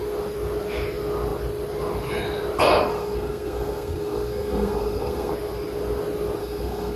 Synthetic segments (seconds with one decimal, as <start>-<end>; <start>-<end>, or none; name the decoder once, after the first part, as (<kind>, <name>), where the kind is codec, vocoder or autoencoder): 2.9-5.3 (codec, SNAC); 6.4-7.0